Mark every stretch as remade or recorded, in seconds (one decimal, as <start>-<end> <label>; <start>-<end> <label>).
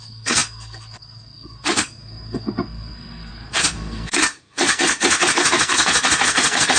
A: 0.0-6.8 remade